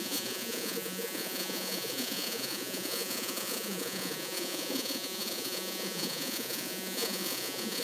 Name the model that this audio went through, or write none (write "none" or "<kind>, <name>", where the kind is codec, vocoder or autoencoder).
vocoder, Vocos